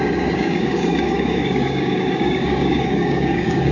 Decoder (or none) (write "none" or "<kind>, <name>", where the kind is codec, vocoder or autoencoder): codec, DAC